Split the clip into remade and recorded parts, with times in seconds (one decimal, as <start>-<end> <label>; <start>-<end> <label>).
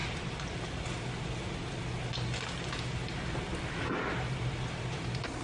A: 0.0-5.4 recorded